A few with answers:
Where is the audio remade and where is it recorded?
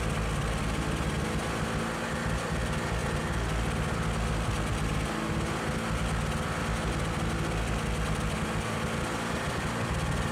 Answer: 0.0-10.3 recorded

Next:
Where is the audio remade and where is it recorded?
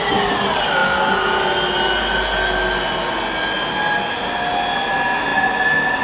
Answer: 0.0-6.0 recorded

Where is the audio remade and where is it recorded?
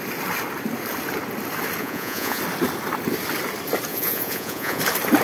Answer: 0.0-1.8 recorded; 1.8-2.4 remade; 2.4-3.9 recorded; 3.9-4.8 remade; 4.8-5.2 recorded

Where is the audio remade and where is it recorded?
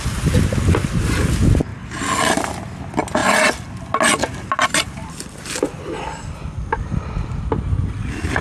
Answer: 0.0-8.4 recorded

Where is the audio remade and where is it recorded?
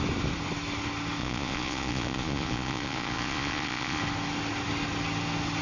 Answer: 0.0-1.2 recorded; 1.2-4.0 remade; 4.0-5.6 recorded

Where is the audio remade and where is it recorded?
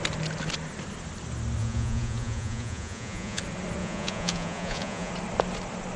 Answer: 0.0-1.6 recorded; 1.6-3.4 remade; 3.4-3.8 recorded; 3.8-5.1 remade; 5.1-6.0 recorded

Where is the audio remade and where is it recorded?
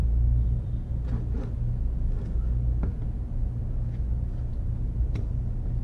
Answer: 0.0-5.8 recorded